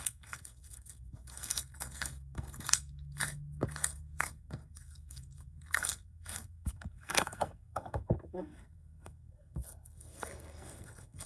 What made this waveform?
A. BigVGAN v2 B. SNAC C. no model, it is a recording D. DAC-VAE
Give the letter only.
B